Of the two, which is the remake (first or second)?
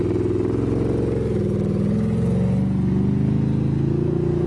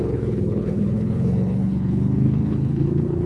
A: second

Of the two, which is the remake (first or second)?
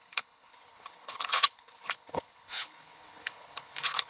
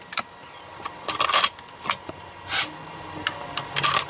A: first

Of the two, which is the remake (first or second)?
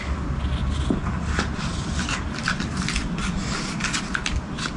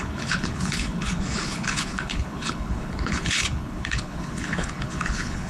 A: second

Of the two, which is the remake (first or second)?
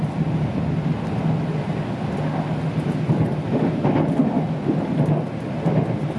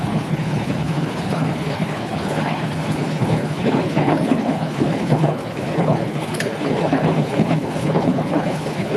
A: second